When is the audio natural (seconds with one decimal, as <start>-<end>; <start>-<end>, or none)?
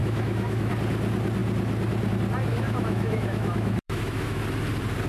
0.7-2.5; 4.4-5.1